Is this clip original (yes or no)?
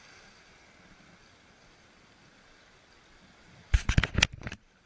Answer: yes